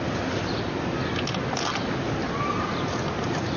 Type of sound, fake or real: real